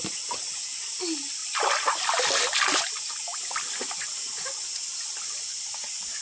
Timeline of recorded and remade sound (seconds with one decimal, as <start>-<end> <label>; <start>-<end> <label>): 0.0-6.2 recorded